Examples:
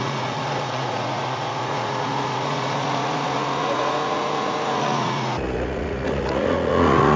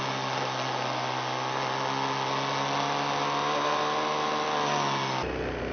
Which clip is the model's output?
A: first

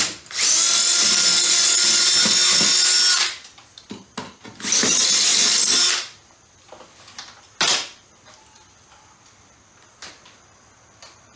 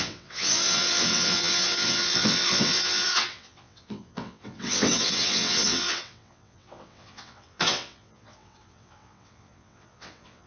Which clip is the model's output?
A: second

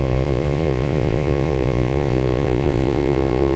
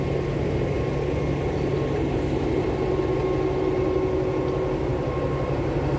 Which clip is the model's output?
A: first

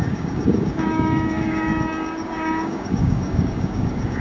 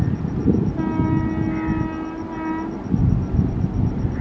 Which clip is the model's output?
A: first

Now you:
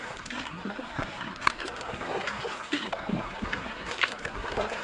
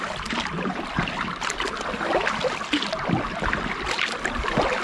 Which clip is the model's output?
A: first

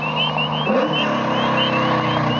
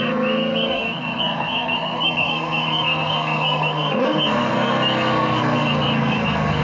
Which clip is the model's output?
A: second